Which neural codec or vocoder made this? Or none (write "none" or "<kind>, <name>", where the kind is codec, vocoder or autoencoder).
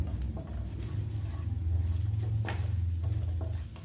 none